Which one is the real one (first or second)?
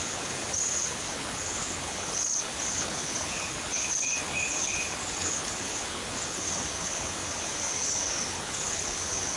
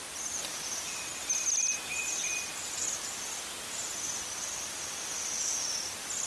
second